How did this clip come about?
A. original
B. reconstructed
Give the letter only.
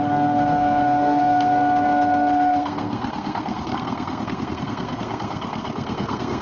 B